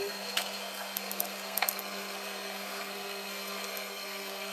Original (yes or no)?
no